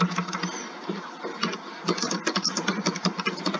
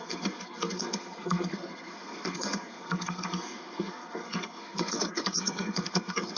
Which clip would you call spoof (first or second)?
second